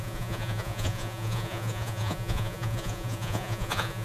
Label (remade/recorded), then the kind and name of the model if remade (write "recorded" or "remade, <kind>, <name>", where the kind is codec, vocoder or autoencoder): remade, vocoder, Vocos